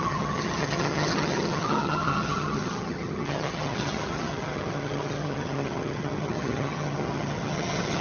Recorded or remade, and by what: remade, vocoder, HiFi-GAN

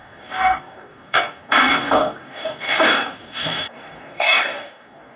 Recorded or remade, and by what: remade, codec, DAC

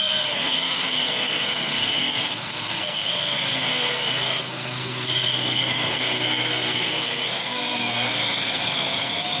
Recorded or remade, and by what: remade, codec, SNAC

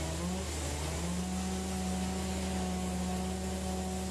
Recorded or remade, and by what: recorded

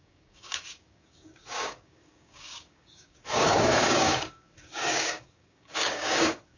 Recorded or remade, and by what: remade, codec, DAC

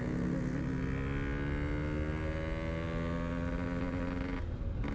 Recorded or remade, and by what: recorded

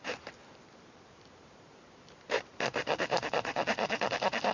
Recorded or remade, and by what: remade, vocoder, BigVGAN v2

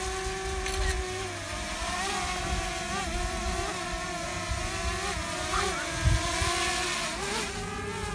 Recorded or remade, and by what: recorded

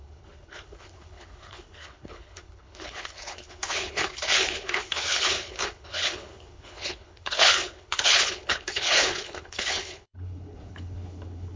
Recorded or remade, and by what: remade, codec, HILCodec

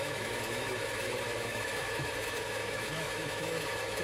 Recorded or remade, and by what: remade, autoencoder, DAC-VAE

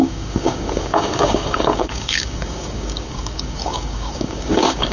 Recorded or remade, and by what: remade, codec, DAC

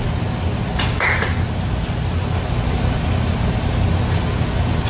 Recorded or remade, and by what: recorded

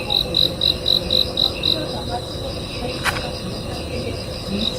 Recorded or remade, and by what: recorded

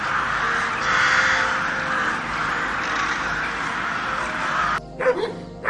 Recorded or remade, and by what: remade, vocoder, BigVGAN v2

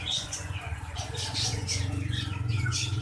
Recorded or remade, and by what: remade, vocoder, Vocos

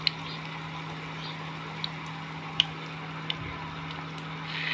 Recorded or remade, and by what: recorded